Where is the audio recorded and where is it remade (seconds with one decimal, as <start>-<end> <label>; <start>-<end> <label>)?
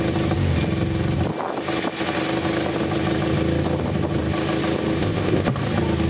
0.0-5.0 recorded; 5.0-5.5 remade; 5.5-6.1 recorded